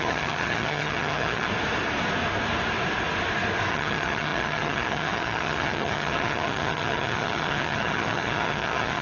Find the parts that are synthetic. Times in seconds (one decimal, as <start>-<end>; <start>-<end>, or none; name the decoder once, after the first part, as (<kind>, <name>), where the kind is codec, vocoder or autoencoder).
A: 0.0-1.5 (vocoder, HiFi-GAN); 3.7-9.0